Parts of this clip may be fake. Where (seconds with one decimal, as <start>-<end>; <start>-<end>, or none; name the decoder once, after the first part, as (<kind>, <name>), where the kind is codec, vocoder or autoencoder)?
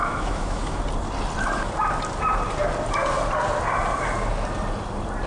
0.0-0.8 (autoencoder, DAC-VAE)